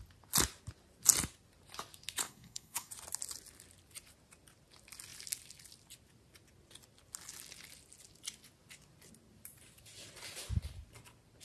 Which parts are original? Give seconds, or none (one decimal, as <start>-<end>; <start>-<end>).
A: 0.0-2.2; 2.9-11.4